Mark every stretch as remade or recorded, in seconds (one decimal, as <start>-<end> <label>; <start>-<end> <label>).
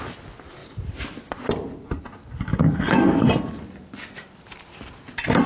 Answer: 0.0-2.5 recorded; 2.5-3.3 remade; 3.3-5.5 recorded